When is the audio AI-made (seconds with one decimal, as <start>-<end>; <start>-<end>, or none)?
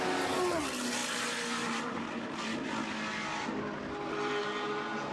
none